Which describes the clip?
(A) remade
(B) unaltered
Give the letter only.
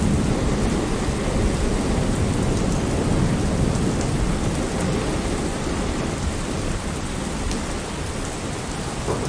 B